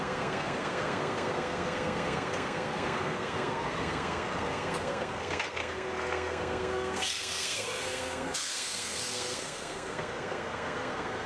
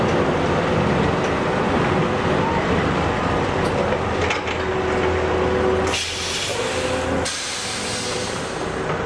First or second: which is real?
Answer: second